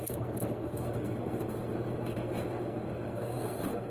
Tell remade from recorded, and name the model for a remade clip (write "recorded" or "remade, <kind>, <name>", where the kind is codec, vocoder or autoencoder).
remade, codec, SNAC